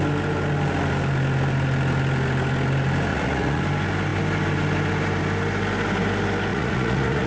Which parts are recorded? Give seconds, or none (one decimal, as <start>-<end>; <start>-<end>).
0.0-3.1; 3.6-6.5